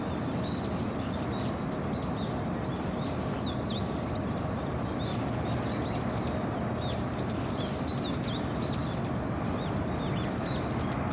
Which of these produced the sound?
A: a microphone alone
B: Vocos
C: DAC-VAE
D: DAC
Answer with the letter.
A